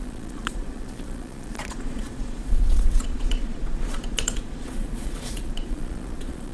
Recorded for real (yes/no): no